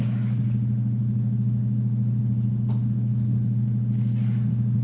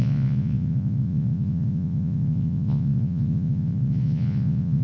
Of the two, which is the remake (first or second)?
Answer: second